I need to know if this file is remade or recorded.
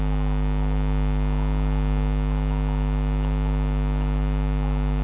recorded